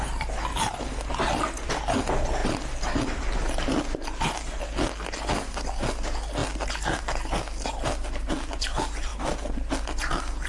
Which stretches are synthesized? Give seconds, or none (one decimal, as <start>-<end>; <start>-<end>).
none